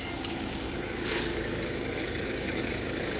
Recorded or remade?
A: remade